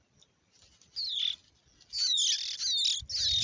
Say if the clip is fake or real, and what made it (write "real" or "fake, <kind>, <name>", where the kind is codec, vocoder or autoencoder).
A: real